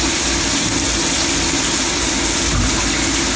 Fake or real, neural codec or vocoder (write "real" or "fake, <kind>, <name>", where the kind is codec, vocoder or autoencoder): real